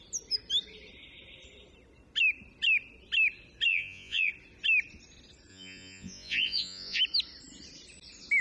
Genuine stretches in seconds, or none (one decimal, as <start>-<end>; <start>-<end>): 0.0-3.7; 4.3-5.5; 7.0-8.4